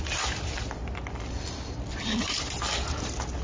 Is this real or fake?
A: real